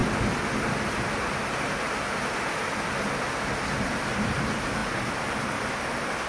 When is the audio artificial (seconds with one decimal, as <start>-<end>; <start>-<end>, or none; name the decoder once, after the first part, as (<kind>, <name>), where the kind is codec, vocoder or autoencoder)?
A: none